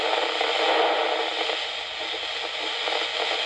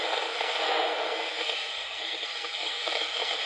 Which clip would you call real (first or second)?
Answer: first